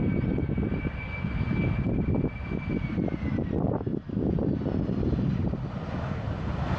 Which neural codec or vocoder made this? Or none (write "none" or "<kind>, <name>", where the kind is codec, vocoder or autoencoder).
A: none